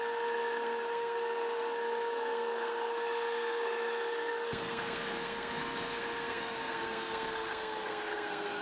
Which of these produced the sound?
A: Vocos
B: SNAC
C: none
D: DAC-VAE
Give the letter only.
B